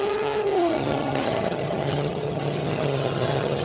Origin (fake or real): fake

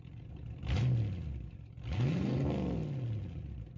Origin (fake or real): real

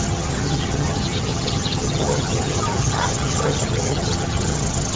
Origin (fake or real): fake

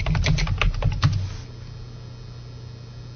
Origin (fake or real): real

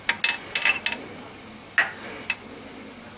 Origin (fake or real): real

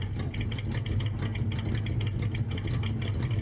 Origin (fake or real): real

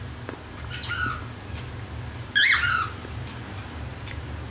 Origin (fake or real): real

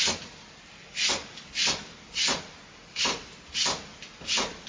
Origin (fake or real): real